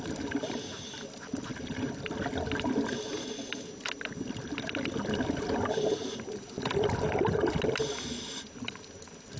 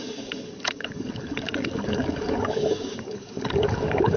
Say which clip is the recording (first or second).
first